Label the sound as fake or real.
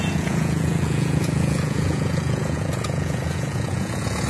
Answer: fake